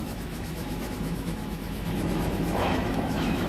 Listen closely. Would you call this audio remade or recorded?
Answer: remade